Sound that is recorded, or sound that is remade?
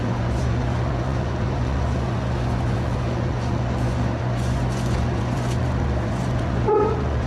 remade